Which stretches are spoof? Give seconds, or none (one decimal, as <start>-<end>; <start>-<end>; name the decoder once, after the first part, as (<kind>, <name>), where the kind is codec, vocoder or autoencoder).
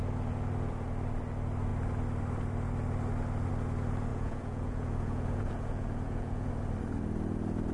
4.1-6.5 (vocoder, Vocos)